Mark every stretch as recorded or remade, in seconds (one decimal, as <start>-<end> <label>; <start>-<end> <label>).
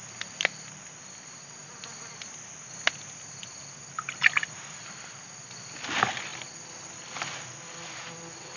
0.0-8.6 recorded